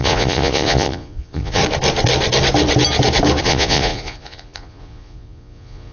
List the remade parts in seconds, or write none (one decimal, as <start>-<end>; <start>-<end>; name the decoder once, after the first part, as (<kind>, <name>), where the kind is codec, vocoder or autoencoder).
0.0-1.6 (vocoder, Vocos); 3.4-5.9